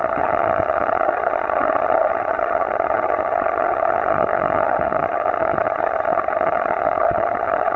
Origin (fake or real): fake